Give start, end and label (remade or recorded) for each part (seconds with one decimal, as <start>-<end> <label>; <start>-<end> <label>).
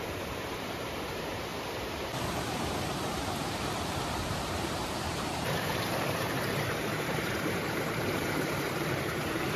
0.0-1.5 remade; 1.5-2.3 recorded; 2.3-9.6 remade